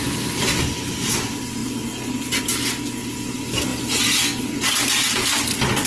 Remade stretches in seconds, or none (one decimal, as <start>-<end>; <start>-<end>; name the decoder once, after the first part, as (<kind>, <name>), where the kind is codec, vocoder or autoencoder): none